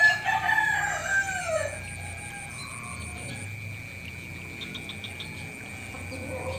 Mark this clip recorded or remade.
recorded